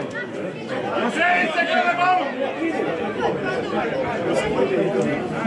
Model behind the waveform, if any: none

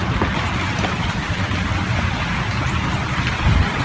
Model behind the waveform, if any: none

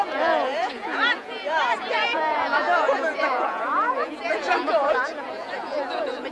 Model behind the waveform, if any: vocoder, Vocos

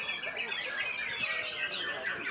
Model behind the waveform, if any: none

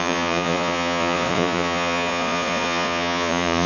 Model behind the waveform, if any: vocoder, Vocos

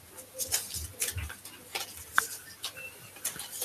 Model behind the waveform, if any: none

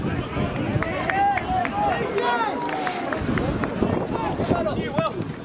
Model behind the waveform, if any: none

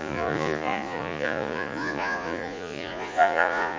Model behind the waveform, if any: vocoder, Vocos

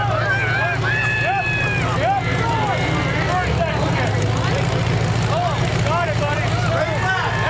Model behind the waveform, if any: none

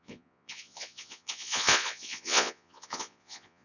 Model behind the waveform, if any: vocoder, Vocos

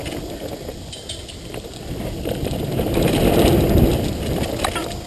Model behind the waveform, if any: none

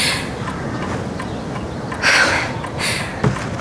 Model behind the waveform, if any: none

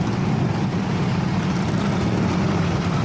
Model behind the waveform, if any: none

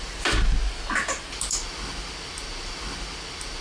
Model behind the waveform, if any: none